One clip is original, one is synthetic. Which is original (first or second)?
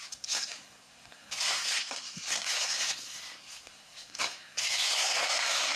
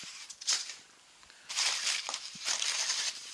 second